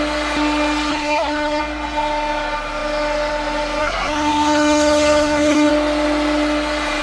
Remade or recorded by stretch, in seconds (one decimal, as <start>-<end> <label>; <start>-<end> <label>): 0.0-0.9 recorded; 0.9-1.6 remade; 1.6-3.8 recorded; 3.8-5.7 remade; 5.7-7.0 recorded